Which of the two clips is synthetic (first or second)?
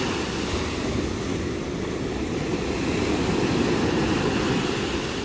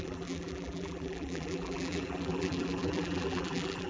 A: second